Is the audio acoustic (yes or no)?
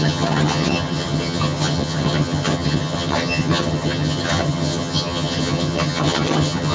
no